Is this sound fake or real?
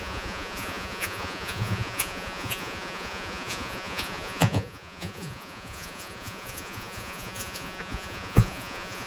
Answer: fake